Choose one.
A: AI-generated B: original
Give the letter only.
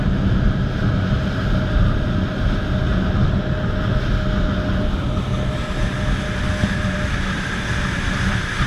B